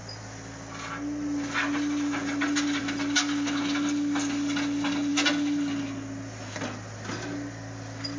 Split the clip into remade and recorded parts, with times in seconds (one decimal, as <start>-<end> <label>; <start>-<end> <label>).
0.0-8.2 recorded